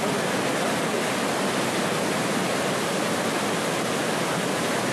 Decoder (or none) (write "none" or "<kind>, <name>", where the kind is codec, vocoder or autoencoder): none